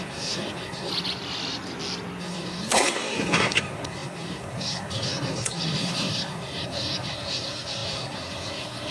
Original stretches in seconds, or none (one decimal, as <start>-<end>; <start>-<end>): 0.9-2.2